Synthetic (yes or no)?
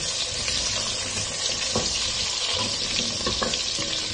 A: no